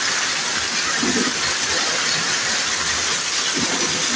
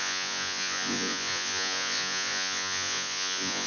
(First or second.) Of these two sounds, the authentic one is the first